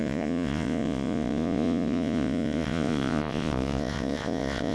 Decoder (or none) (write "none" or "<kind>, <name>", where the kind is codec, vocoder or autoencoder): vocoder, Vocos